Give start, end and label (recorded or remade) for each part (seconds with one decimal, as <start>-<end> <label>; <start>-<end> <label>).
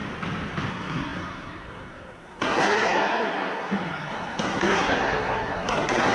0.0-0.7 recorded; 0.7-6.1 remade